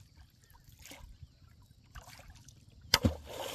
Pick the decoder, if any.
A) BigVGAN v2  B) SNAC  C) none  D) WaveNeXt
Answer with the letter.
C